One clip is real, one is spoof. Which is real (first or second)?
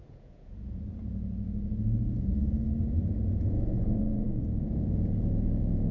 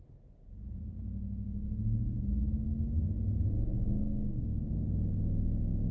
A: second